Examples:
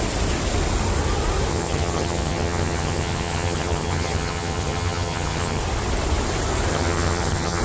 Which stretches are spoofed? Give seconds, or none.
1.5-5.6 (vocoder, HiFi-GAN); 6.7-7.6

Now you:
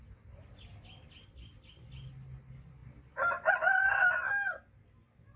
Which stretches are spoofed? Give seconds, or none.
none

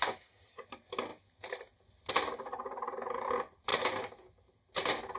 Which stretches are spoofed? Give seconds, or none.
none

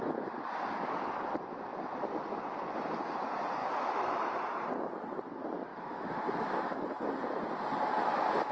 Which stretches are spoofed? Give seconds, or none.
3.6-4.3 (autoencoder, DAC-VAE); 5.7-7.0

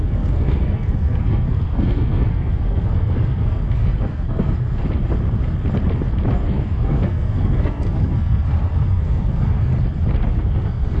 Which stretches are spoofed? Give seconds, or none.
0.0-4.8 (codec, SNAC); 6.3-9.7; 10.3-11.0

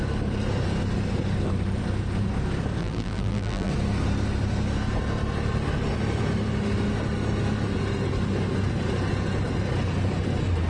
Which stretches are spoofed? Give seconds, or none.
2.8-3.7 (vocoder, BigVGAN v2)